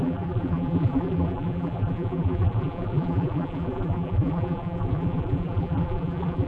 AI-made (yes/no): yes